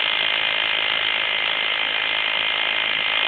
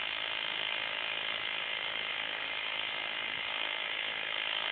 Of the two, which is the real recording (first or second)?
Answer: first